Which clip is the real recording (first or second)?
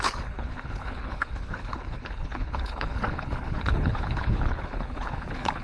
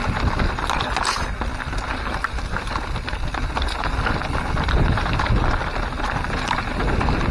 second